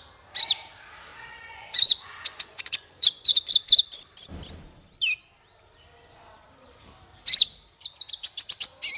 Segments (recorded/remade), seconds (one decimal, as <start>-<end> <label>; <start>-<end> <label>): 0.0-1.1 recorded; 1.1-3.5 remade; 3.5-9.0 recorded